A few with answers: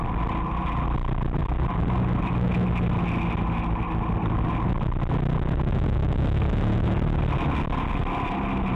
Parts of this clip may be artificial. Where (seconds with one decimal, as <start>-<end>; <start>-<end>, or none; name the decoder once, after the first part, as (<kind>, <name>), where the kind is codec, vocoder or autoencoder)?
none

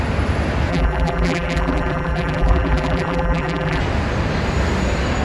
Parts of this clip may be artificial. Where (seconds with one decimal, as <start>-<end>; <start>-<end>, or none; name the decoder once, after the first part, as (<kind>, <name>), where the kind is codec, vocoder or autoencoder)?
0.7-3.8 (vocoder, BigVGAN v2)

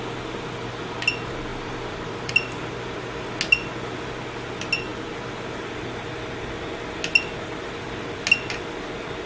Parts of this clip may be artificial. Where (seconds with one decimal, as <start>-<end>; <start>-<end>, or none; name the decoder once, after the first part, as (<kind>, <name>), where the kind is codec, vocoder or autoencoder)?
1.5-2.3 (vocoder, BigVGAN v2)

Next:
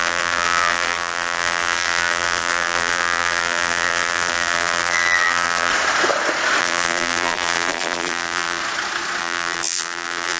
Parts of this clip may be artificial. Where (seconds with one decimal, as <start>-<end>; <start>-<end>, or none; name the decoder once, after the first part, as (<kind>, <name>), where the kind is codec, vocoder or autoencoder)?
0.0-5.7 (vocoder, BigVGAN v2); 6.6-8.6; 9.2-10.4

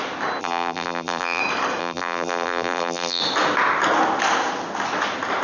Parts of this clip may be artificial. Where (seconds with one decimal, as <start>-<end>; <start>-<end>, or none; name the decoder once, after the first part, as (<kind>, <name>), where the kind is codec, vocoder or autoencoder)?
0.4-1.4 (vocoder, BigVGAN v2); 1.8-3.2

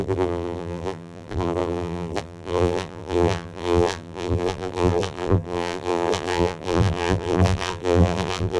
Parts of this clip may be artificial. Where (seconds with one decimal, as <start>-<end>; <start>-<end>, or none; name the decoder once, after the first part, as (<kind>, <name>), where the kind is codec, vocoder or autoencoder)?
0.0-8.6 (vocoder, BigVGAN v2)

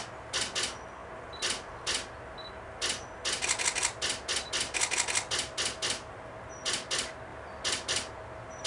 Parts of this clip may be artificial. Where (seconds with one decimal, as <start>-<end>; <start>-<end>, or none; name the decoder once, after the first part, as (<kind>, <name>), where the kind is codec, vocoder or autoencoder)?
none

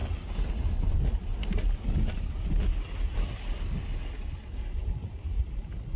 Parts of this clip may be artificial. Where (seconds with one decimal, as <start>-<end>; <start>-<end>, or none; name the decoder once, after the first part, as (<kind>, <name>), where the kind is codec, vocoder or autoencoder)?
4.8-5.6 (vocoder, BigVGAN v2)